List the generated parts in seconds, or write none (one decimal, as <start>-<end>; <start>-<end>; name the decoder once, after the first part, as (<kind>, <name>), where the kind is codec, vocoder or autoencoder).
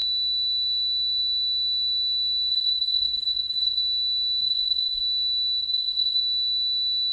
2.5-3.8 (codec, SNAC); 4.4-5.0; 5.6-6.2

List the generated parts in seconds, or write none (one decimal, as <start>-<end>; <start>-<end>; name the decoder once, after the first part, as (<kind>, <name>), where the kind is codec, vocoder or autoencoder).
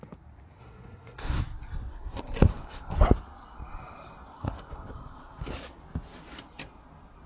0.6-1.4 (codec, SNAC); 1.9-3.1; 4.3-5.4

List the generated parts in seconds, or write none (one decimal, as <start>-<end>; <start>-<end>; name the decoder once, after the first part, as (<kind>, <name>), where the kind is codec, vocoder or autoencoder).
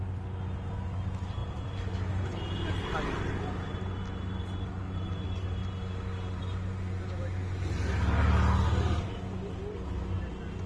none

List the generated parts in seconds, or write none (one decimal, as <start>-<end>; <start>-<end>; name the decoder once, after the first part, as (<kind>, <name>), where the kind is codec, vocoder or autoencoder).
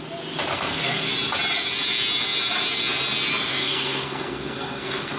0.5-1.1 (codec, SNAC); 3.5-5.2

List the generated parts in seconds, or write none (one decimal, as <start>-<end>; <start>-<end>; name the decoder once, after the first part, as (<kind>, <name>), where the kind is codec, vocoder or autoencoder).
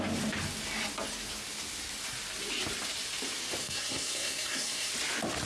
3.6-4.9 (codec, SNAC)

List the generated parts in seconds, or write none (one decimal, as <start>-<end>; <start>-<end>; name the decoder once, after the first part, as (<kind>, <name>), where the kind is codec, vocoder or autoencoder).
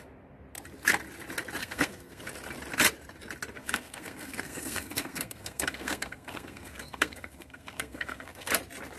1.6-2.2 (codec, SNAC); 3.6-8.5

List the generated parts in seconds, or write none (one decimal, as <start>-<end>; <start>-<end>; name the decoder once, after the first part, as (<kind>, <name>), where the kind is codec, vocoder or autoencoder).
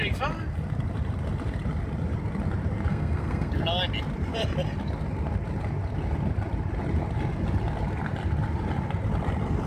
2.9-3.5 (codec, SNAC)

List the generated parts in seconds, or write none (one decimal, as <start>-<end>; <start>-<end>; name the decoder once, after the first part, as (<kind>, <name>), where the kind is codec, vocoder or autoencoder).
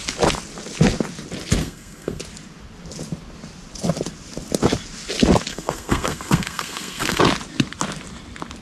1.6-2.2 (codec, SNAC); 5.5-7.2